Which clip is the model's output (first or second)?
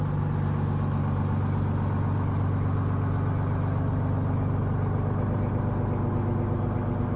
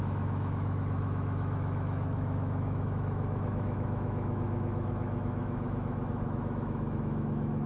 second